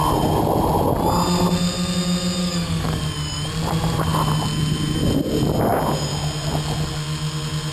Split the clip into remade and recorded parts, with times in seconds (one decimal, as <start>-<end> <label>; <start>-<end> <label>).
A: 0.0-2.4 recorded; 2.4-3.0 remade; 3.0-7.7 recorded

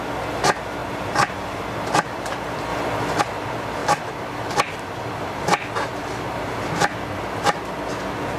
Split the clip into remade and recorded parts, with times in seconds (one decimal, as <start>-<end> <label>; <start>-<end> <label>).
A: 0.0-0.8 recorded; 0.8-2.2 remade; 2.2-3.8 recorded; 3.8-5.7 remade; 5.7-8.4 recorded

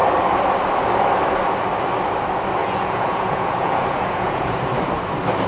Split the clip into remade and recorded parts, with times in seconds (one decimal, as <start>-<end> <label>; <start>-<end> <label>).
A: 0.0-2.6 recorded; 2.6-4.6 remade; 4.6-5.5 recorded

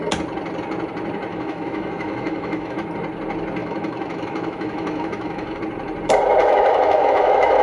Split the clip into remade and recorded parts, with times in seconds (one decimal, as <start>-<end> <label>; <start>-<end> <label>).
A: 0.0-1.3 recorded; 1.3-2.9 remade; 2.9-3.6 recorded; 3.6-5.6 remade; 5.6-6.4 recorded; 6.4-7.6 remade

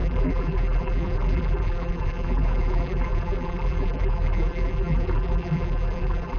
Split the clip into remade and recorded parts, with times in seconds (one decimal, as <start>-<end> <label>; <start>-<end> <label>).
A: 0.0-6.4 remade

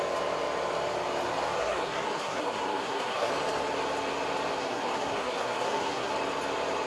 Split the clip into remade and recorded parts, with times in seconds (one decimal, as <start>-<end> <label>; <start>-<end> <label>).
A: 0.0-1.6 recorded; 1.6-3.3 remade; 3.3-4.6 recorded; 4.6-6.1 remade; 6.1-6.9 recorded

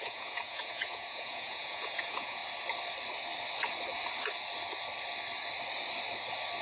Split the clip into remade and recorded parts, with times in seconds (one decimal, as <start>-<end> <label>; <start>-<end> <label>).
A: 0.0-2.4 remade; 2.4-6.6 recorded

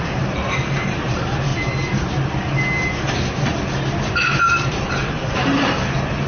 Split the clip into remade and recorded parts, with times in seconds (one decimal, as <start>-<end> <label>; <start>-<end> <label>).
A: 0.0-1.5 remade; 1.5-3.1 recorded; 3.1-3.5 remade; 3.5-4.2 recorded; 4.2-6.3 remade